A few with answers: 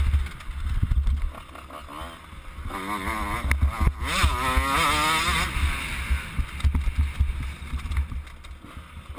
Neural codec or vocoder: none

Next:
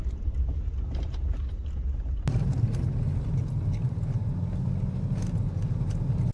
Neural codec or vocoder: none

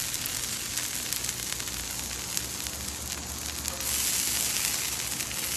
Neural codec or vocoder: none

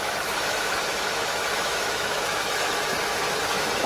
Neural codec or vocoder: autoencoder, DAC-VAE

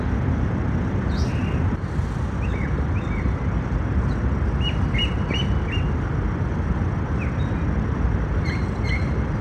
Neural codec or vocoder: none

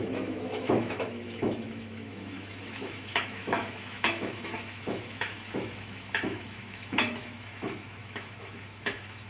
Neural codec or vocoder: autoencoder, DAC-VAE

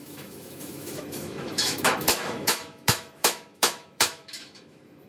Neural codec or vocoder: autoencoder, DAC-VAE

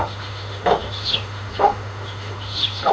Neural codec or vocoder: autoencoder, DAC-VAE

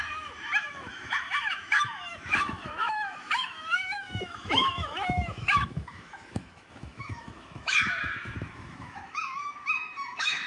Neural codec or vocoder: autoencoder, DAC-VAE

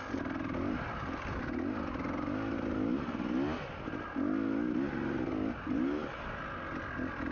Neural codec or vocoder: none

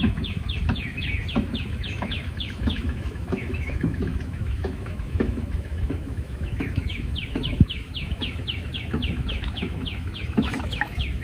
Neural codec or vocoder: autoencoder, DAC-VAE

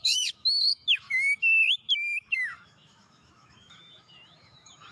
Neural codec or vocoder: autoencoder, DAC-VAE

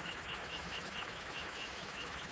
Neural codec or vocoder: autoencoder, DAC-VAE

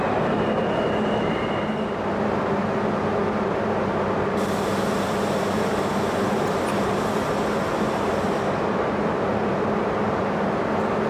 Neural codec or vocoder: none